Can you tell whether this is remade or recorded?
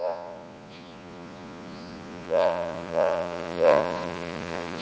remade